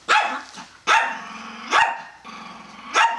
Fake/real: real